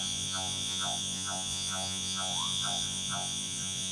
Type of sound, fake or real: fake